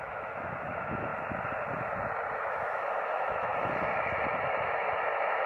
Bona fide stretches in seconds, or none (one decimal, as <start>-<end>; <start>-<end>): 1.1-2.4; 3.5-4.5